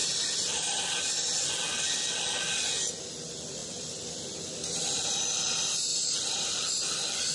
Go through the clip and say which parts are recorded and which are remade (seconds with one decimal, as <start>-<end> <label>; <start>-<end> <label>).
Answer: 0.0-1.0 remade; 1.0-3.6 recorded; 3.6-4.2 remade; 4.2-5.9 recorded; 5.9-6.8 remade; 6.8-7.3 recorded